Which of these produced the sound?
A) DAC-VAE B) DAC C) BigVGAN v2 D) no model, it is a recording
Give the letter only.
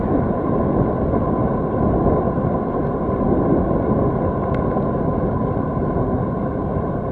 D